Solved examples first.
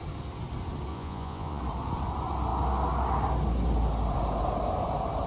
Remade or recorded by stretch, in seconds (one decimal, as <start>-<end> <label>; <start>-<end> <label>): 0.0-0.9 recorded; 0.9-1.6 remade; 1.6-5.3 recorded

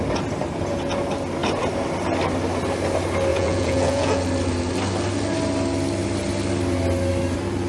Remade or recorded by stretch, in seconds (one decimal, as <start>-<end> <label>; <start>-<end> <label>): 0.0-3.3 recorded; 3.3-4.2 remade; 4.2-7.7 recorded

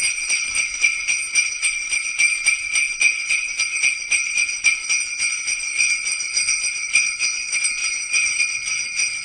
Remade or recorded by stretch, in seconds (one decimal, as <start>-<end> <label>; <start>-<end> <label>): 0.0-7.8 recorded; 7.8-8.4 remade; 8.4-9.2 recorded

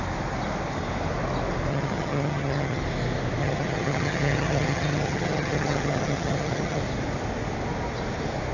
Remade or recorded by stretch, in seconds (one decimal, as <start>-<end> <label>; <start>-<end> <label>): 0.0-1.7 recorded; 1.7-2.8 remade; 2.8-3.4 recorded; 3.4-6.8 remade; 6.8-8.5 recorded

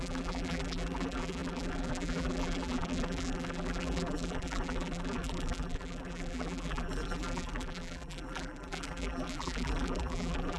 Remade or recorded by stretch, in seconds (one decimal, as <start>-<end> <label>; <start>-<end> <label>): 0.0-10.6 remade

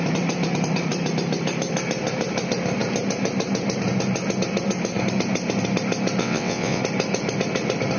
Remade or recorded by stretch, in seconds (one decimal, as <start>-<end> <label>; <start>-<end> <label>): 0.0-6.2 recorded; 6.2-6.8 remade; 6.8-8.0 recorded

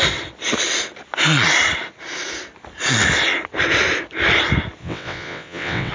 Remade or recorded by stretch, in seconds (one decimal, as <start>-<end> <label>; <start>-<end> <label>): 0.0-4.8 recorded; 4.8-5.9 remade

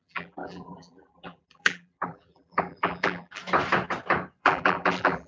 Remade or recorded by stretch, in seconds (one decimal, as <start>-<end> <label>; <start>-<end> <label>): 0.0-3.4 remade; 3.4-4.4 recorded; 4.4-5.3 remade